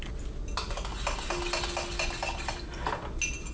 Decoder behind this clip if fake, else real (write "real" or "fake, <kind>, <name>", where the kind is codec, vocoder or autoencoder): real